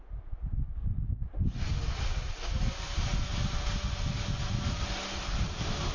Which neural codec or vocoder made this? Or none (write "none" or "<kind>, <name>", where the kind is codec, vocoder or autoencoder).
none